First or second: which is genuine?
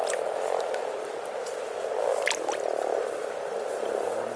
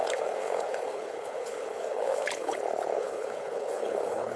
first